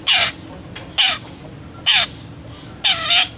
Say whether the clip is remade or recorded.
recorded